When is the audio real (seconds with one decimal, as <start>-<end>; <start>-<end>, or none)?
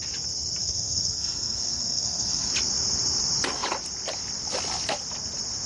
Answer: 0.0-0.6; 2.5-5.7